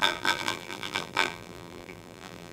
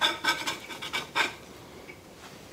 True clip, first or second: second